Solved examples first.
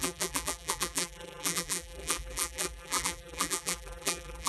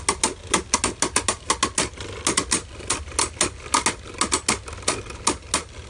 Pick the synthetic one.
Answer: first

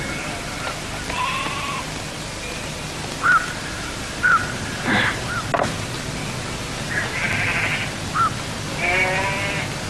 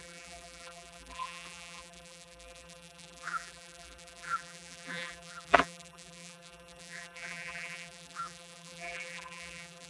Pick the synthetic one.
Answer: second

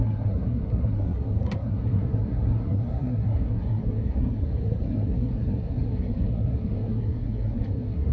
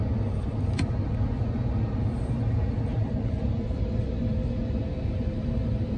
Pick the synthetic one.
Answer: first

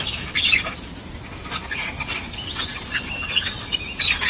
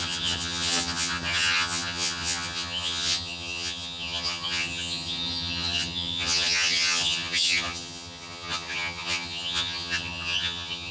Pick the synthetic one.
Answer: second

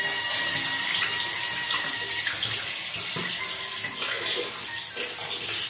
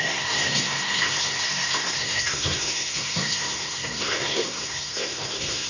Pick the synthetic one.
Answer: second